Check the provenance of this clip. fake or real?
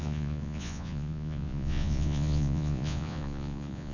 fake